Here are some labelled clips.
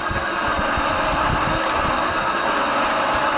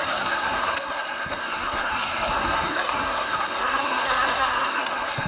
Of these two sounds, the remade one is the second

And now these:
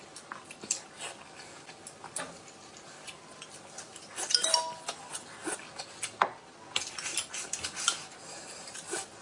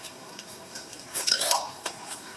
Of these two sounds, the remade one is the second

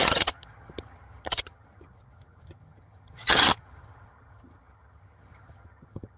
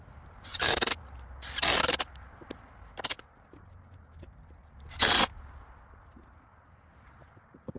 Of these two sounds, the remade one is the first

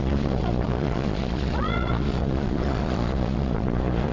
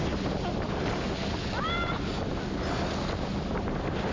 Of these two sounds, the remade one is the first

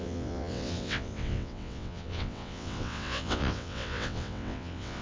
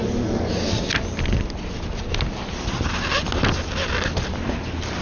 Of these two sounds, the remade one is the first